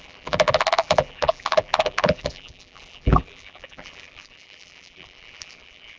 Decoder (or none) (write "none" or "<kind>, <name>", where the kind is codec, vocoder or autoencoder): vocoder, BigVGAN v2